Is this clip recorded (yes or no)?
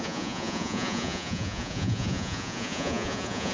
no